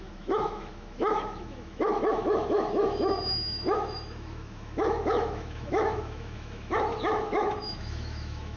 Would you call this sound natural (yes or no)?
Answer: no